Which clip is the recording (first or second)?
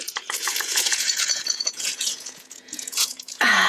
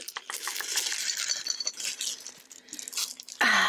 second